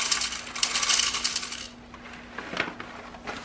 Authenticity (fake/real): real